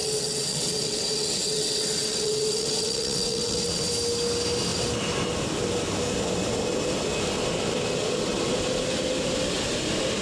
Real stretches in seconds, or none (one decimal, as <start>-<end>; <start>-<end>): 3.9-10.2